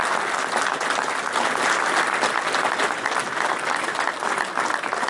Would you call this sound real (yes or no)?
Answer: yes